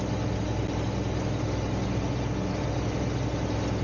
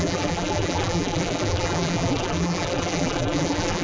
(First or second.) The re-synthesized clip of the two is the second